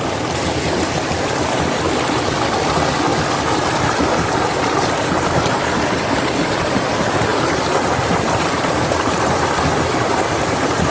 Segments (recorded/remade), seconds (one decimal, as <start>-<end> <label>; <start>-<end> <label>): 0.0-10.9 recorded